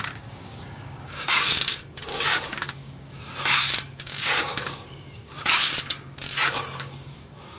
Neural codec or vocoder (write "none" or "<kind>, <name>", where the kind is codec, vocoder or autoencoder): codec, DAC